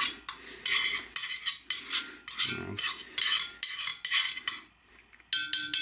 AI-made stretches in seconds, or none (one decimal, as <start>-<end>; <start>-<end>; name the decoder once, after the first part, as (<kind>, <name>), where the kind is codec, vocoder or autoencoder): none